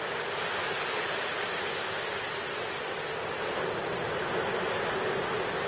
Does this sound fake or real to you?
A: real